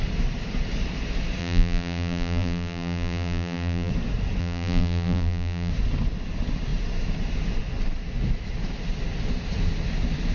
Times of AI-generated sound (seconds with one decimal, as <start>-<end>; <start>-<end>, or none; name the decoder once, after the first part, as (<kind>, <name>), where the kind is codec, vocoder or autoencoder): 1.4-3.9 (vocoder, BigVGAN v2); 4.4-5.7